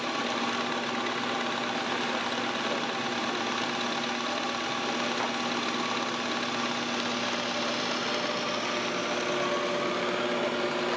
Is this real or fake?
real